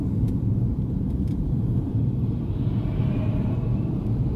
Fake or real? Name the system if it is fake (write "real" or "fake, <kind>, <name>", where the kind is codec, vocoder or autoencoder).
fake, vocoder, BigVGAN v2